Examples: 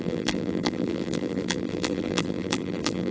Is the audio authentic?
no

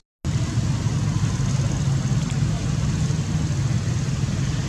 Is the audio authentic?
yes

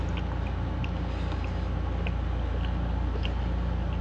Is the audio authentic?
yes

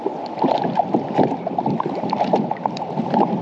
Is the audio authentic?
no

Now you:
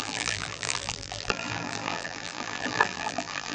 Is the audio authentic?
no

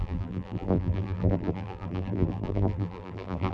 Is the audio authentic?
no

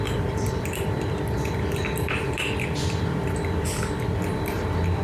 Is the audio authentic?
no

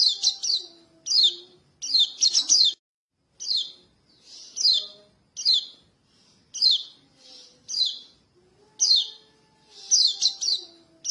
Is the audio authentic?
yes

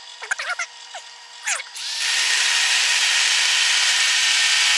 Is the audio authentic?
no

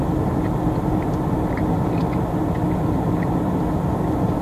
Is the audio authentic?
yes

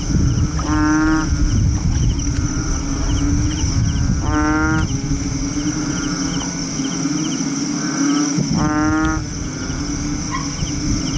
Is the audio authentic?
yes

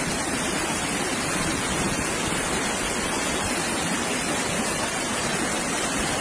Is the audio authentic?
yes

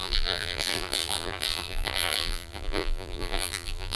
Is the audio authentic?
no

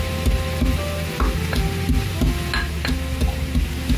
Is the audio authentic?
yes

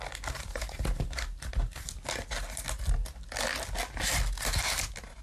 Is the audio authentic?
yes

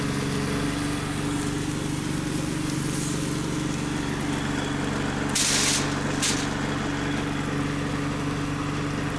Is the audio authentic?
yes